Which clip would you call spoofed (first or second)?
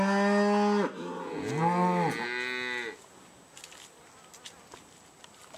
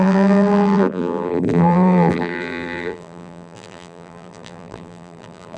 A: second